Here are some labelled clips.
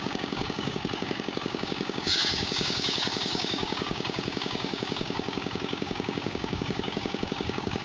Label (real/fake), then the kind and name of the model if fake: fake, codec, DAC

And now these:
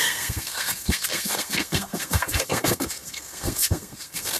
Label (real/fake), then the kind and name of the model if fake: fake, codec, SNAC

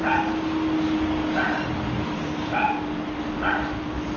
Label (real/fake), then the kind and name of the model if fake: real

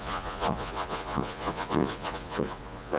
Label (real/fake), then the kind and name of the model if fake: fake, vocoder, Vocos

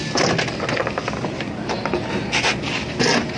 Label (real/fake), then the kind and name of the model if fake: real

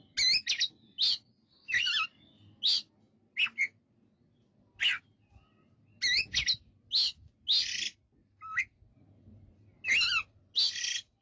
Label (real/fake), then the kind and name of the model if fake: real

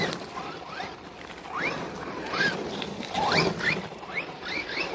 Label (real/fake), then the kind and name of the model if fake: real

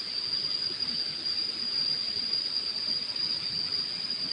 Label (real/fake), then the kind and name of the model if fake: real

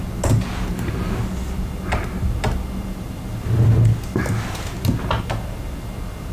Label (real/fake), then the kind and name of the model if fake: real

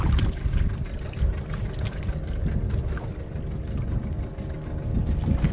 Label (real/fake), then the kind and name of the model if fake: real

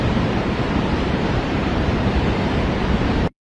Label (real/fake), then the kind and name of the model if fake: fake, vocoder, BigVGAN v2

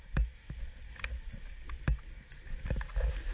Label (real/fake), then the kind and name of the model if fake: real